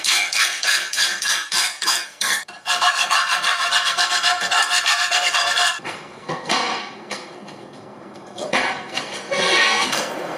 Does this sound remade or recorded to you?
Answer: remade